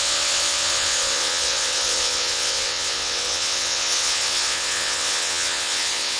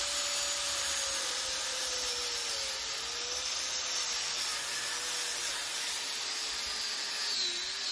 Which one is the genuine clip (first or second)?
second